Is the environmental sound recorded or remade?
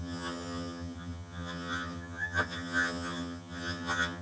remade